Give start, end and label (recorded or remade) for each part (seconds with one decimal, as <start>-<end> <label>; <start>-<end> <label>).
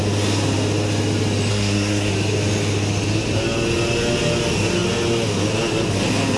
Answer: 0.0-1.5 recorded; 1.5-2.1 remade; 2.1-6.4 recorded